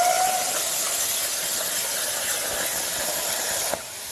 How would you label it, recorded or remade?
recorded